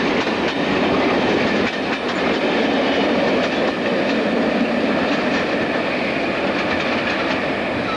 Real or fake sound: real